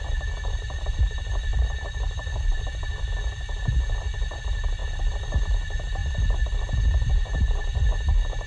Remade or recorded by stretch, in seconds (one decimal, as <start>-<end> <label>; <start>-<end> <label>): 0.0-1.5 recorded; 1.5-2.6 remade; 2.6-8.5 recorded